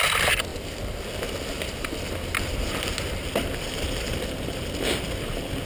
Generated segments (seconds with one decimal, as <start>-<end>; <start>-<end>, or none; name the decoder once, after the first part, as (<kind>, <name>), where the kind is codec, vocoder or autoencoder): none